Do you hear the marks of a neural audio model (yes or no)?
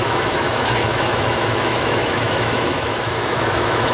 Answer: yes